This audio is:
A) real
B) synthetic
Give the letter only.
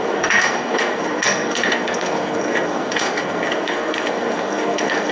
B